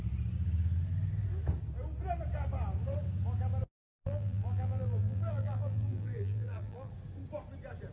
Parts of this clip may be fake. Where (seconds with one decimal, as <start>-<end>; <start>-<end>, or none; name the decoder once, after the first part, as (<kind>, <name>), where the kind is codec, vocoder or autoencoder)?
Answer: 3.9-6.9 (vocoder, BigVGAN v2)